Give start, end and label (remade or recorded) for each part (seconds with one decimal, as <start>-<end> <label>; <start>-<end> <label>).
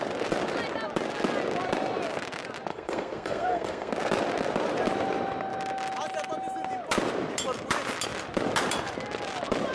0.0-2.7 recorded; 2.7-3.9 remade; 3.9-9.7 recorded